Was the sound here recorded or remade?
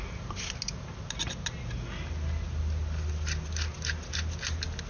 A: recorded